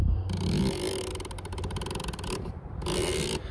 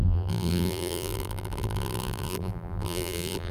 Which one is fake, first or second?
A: second